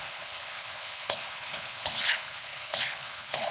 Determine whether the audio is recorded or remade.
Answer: remade